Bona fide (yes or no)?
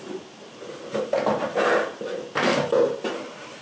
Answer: yes